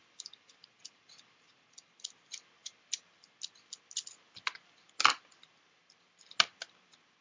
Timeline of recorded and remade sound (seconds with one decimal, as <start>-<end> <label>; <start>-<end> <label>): 0.0-0.8 remade; 0.8-7.2 recorded